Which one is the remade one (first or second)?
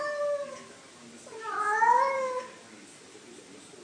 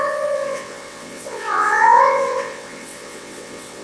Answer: second